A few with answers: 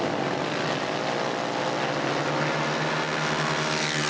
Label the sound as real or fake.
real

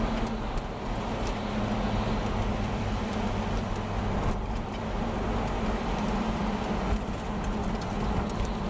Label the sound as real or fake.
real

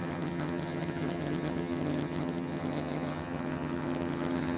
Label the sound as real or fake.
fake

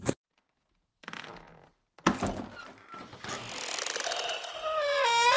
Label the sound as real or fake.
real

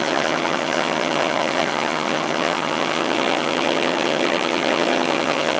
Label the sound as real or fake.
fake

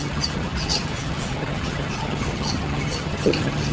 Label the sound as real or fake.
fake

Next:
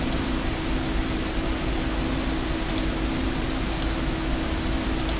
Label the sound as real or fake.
real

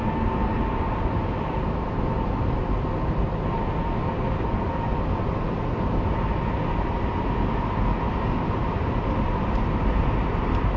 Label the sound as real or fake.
real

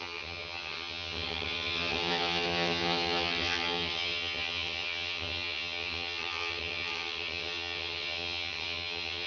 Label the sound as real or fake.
fake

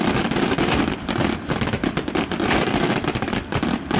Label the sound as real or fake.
real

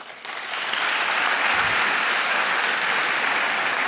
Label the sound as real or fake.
real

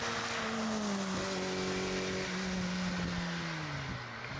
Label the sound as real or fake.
real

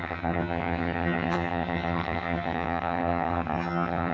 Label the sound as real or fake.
fake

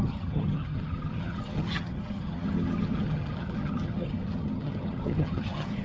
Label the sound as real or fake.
fake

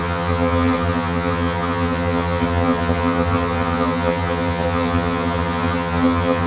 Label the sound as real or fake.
fake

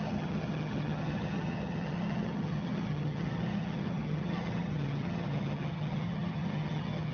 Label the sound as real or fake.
fake